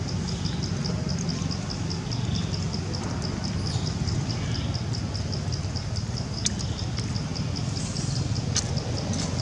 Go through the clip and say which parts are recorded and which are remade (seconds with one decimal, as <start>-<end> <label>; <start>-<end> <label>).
0.0-9.4 recorded